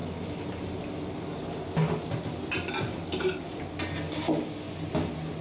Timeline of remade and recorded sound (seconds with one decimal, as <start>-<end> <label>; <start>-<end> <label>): 0.0-5.4 recorded